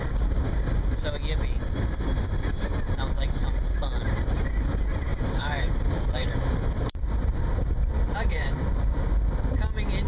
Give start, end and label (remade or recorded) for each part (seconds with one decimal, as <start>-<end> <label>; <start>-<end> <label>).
0.0-5.1 recorded; 5.1-9.1 remade; 9.1-10.1 recorded